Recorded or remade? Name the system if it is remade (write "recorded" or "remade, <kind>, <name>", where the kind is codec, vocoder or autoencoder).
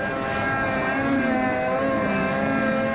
recorded